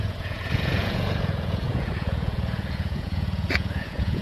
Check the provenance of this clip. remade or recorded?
remade